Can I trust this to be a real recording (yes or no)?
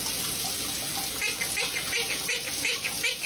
yes